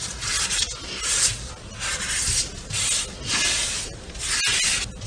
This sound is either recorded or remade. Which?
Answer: recorded